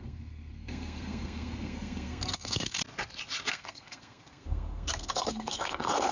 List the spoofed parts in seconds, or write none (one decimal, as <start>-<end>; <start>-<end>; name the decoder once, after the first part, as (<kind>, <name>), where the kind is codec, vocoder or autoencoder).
0.0-2.8 (codec, SNAC); 3.5-6.1